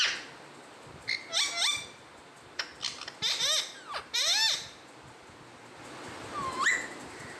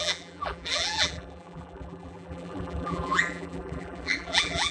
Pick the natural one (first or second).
first